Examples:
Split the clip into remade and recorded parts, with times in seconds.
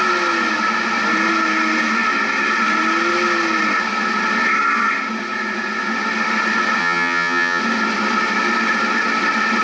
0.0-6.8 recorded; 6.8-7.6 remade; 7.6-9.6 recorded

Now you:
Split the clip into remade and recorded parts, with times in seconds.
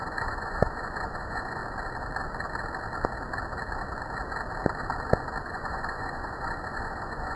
0.0-1.6 remade; 1.6-5.4 recorded; 5.4-7.4 remade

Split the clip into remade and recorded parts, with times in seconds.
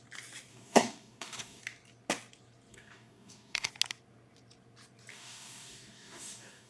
0.0-0.5 recorded; 0.5-1.6 remade; 1.6-2.7 recorded; 2.7-3.7 remade; 3.7-5.1 recorded; 5.1-6.7 remade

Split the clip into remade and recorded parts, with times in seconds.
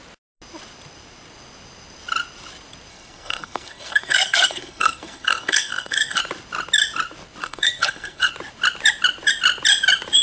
0.0-2.9 recorded; 2.9-6.2 remade; 6.2-7.4 recorded; 7.4-8.3 remade; 8.3-10.2 recorded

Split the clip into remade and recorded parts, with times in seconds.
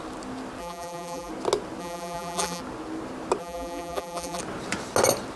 0.0-0.6 recorded; 0.6-1.3 remade; 1.3-1.8 recorded; 1.8-2.6 remade; 2.6-3.4 recorded; 3.4-4.4 remade; 4.4-5.4 recorded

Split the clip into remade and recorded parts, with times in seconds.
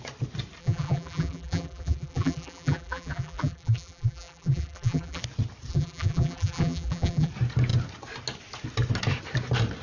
0.0-0.6 recorded; 0.6-5.2 remade; 5.2-5.7 recorded; 5.7-7.3 remade; 7.3-9.8 recorded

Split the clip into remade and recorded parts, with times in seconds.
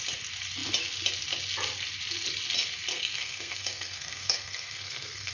0.0-2.9 recorded; 2.9-5.3 remade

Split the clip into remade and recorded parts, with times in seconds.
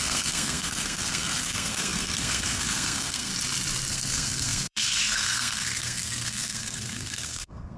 0.0-3.3 remade; 3.3-3.9 recorded; 3.9-7.8 remade